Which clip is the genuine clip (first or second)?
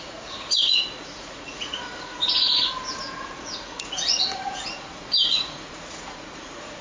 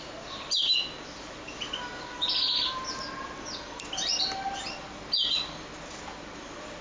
second